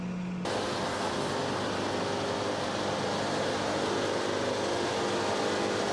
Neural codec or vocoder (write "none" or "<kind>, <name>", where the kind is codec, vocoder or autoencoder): none